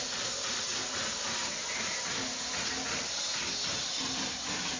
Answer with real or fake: real